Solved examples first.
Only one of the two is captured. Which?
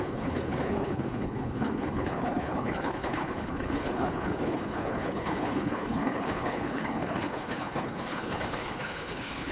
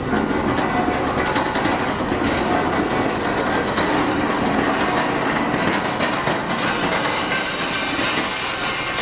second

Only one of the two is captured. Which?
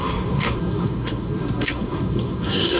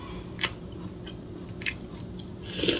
second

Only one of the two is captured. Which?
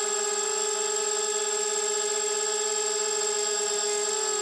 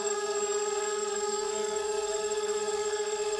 first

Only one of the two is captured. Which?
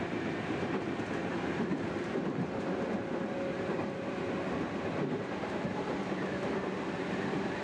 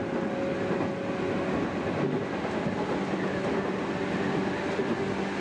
second